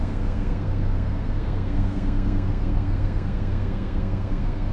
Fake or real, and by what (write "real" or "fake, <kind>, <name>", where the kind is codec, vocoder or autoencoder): fake, codec, SNAC